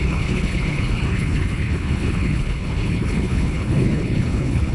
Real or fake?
fake